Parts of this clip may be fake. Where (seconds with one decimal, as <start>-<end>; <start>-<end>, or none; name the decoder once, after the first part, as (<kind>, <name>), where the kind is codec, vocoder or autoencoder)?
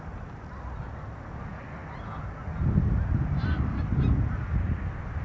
none